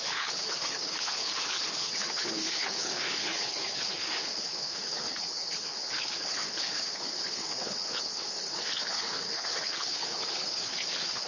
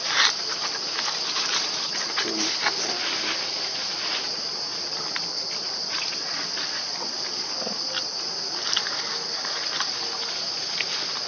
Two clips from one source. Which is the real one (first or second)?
second